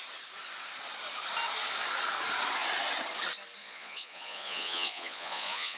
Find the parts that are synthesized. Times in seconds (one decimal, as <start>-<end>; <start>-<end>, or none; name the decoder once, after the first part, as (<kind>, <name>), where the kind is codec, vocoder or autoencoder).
3.6-5.8 (vocoder, Vocos)